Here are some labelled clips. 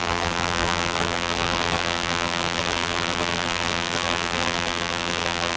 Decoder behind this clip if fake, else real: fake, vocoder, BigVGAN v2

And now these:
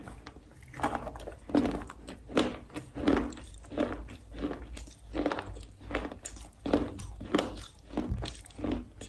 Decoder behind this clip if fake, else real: real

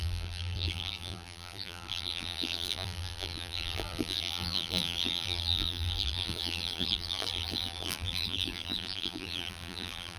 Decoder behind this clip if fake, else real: fake, vocoder, BigVGAN v2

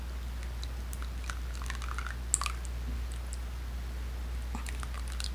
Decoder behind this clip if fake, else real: real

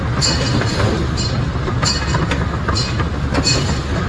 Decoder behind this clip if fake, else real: fake, vocoder, BigVGAN v2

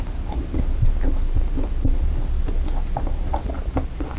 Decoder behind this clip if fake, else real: real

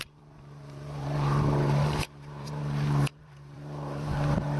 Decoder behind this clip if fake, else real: fake, vocoder, BigVGAN v2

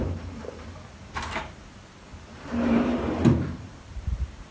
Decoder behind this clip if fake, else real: fake, vocoder, BigVGAN v2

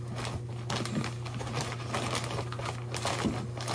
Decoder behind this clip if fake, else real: real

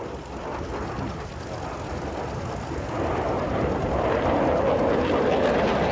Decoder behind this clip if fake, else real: real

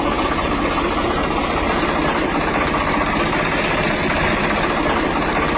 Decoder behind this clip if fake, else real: real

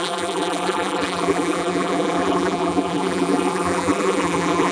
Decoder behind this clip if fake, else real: fake, vocoder, BigVGAN v2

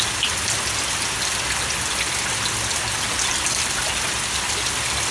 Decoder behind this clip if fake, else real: real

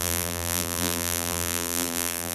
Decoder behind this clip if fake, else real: fake, vocoder, BigVGAN v2